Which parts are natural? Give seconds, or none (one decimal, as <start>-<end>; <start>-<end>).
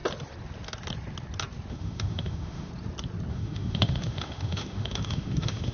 0.0-1.7; 2.7-3.3